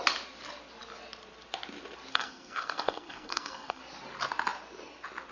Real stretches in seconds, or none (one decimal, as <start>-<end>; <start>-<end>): 0.0-2.1; 3.8-5.3